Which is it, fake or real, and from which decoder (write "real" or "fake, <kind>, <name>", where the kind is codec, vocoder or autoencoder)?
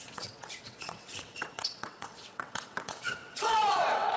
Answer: fake, vocoder, WaveNeXt